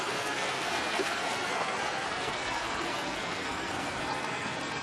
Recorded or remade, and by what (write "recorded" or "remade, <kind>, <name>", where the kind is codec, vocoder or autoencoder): remade, codec, SNAC